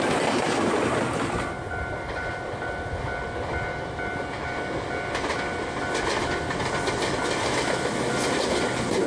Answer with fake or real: real